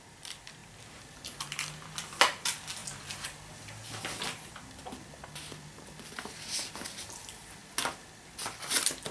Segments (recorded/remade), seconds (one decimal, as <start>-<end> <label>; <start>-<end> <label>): 0.0-9.1 recorded